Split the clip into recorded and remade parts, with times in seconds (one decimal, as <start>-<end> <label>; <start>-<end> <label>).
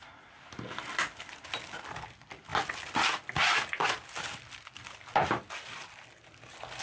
0.0-6.8 recorded